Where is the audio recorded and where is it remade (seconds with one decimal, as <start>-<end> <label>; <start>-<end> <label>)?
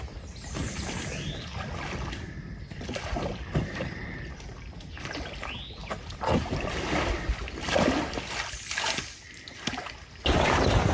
0.0-5.8 recorded; 5.8-6.7 remade; 6.7-10.9 recorded